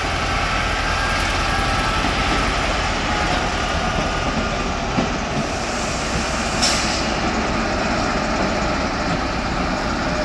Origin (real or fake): real